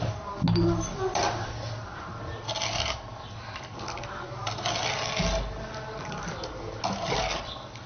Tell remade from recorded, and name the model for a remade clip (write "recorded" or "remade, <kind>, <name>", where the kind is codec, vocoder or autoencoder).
recorded